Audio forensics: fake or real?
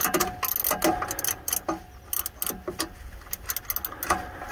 real